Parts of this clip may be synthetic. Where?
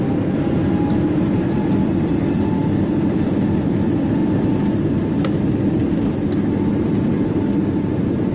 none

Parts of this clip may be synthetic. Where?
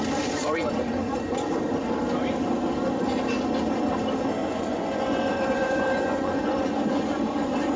4.4-7.0 (vocoder, Vocos)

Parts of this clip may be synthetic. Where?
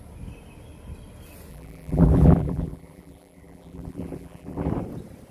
1.5-4.7 (vocoder, BigVGAN v2)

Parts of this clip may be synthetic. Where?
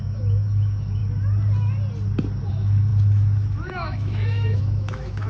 0.0-1.0 (autoencoder, DAC-VAE); 2.5-5.3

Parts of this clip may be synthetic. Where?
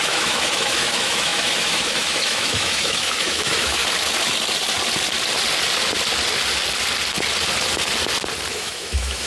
0.0-3.8 (autoencoder, DAC-VAE); 8.5-9.3